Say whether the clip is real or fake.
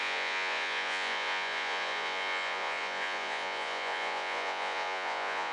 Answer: fake